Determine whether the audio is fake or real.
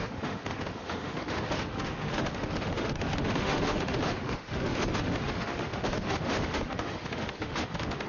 fake